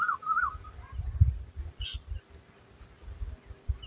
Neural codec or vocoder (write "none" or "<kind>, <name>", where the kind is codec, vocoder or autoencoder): none